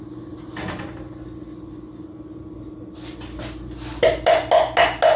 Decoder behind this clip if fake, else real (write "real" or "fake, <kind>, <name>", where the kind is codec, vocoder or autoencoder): real